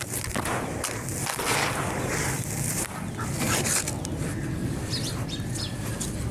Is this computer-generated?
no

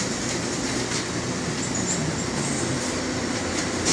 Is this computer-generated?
no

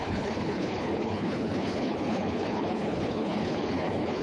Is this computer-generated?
yes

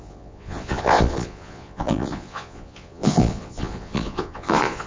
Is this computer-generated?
yes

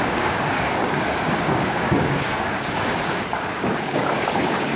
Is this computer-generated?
yes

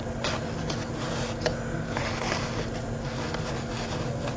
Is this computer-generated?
no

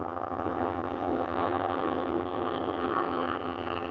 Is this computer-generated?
yes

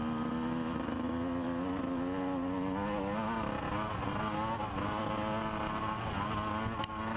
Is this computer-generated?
no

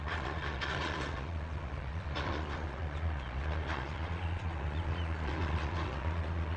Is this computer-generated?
yes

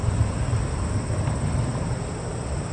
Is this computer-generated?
no